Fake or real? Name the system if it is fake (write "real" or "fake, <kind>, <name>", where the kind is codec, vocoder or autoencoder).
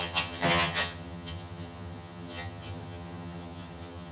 fake, vocoder, HiFi-GAN